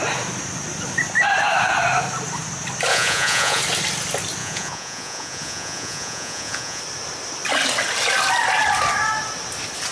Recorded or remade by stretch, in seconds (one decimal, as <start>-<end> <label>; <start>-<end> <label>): 0.0-2.9 recorded; 2.9-3.6 remade; 3.6-4.4 recorded; 4.4-6.8 remade; 6.8-9.9 recorded